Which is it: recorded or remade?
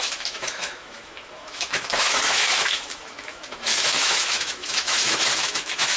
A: remade